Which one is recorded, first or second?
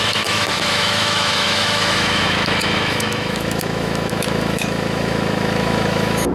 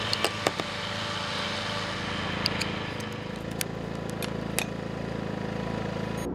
second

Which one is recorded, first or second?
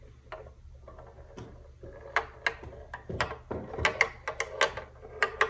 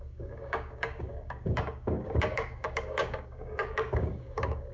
first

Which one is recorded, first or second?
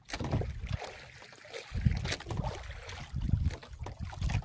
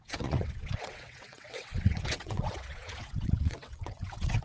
first